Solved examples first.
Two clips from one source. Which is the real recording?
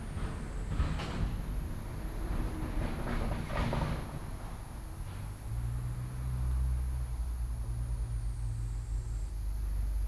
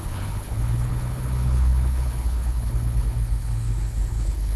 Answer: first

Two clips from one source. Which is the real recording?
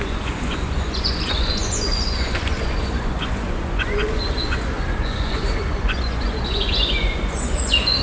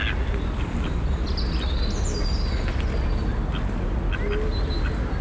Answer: second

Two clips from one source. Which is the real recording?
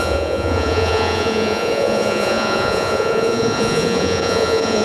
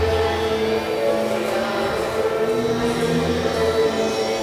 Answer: second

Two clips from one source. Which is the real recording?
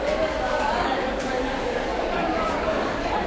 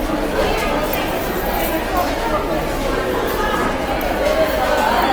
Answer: second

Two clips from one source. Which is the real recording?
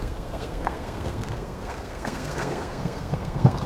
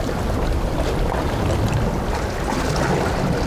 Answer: second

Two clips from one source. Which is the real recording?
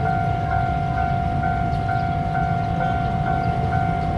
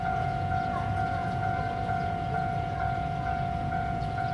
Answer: first